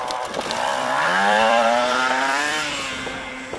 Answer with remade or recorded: remade